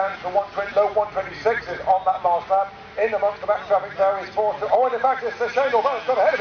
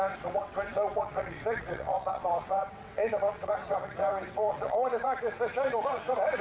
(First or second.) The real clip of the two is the first